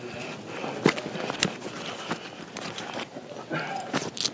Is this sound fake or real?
real